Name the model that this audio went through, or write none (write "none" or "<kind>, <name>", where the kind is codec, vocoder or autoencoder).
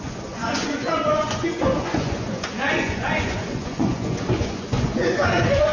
vocoder, Vocos